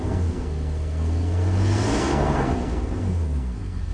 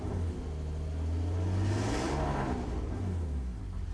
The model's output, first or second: first